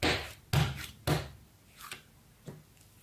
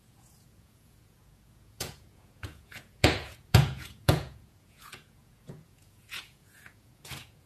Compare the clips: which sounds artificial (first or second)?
second